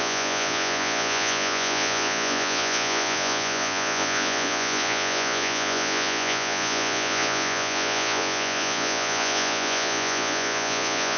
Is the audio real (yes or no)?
no